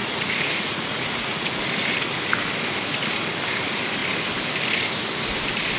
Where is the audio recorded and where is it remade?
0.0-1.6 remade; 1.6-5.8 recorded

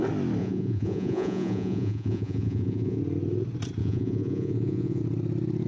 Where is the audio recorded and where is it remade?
0.0-0.4 recorded; 0.4-3.0 remade; 3.0-3.8 recorded; 3.8-5.0 remade; 5.0-5.7 recorded

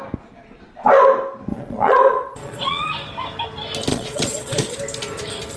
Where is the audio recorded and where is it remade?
0.0-1.5 recorded; 1.5-2.9 remade; 2.9-3.9 recorded; 3.9-4.8 remade; 4.8-5.6 recorded

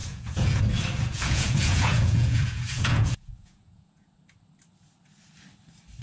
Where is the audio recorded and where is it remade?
0.0-0.6 remade; 0.6-1.1 recorded; 1.1-4.1 remade; 4.1-6.0 recorded

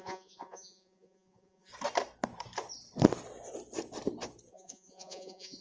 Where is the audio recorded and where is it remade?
0.0-1.7 remade; 1.7-4.5 recorded; 4.5-5.6 remade

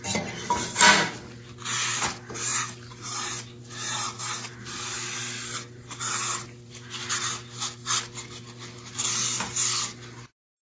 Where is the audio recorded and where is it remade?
0.0-10.6 recorded